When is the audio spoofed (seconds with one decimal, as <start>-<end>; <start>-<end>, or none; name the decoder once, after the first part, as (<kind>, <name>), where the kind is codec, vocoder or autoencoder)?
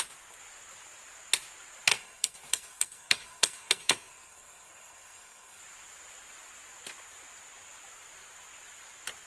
1.9-5.6 (codec, SNAC)